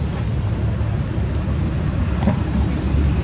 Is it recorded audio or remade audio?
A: recorded